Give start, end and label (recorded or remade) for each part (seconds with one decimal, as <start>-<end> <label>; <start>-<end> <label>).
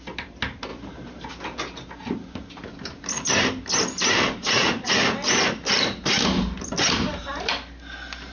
0.0-4.4 recorded; 4.4-4.9 remade; 4.9-8.3 recorded